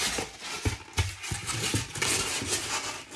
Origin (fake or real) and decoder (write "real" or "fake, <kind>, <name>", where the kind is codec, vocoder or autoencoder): real